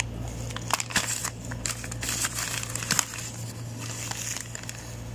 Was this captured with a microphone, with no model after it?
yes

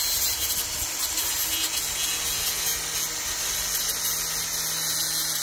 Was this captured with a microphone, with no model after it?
yes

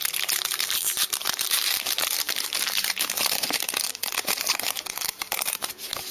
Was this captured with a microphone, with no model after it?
no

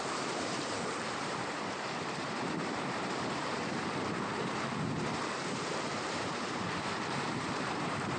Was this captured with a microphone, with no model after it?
no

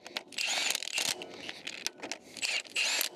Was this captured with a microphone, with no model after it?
yes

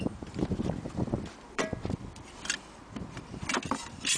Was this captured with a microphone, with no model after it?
no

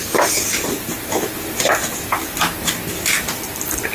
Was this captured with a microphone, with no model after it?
yes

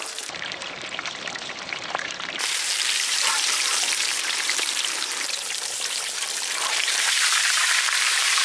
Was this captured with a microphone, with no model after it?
no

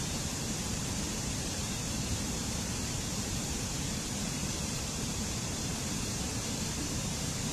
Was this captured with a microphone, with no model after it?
no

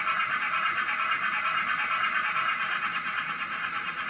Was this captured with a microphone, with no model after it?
yes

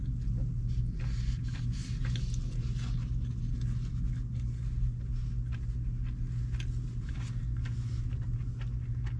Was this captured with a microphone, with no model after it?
yes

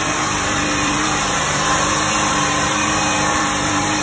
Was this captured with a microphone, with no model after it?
no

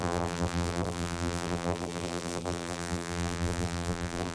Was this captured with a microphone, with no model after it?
no